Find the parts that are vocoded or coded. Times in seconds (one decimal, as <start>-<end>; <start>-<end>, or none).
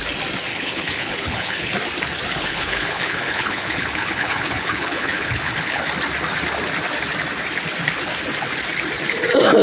0.5-1.7; 2.3-5.9